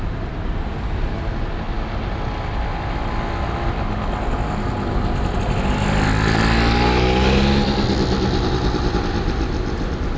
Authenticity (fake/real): real